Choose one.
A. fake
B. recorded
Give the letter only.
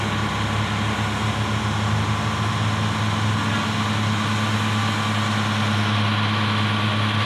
B